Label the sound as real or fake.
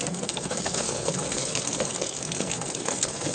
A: fake